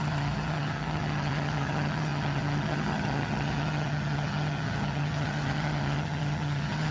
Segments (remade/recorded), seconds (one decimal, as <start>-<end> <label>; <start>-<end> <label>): 0.0-6.9 remade